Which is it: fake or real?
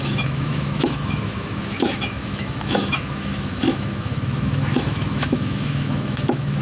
fake